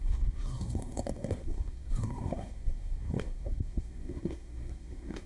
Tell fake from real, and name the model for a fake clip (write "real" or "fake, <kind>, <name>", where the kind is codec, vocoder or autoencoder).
fake, codec, SNAC